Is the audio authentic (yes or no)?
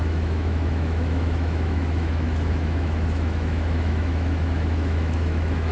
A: no